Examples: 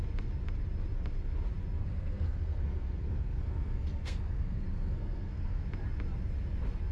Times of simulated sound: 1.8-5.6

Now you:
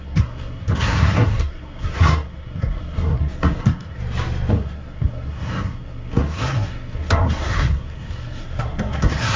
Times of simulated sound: 0.0-4.0; 4.5-9.4